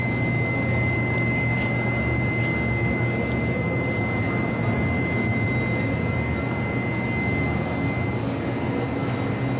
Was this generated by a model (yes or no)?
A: no